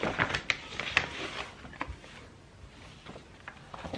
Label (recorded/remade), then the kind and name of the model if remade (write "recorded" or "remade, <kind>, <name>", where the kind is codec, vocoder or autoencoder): recorded